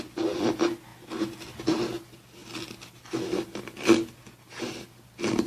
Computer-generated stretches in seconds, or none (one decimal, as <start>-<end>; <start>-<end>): none